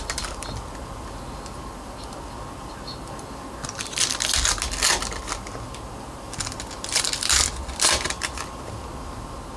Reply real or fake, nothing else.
real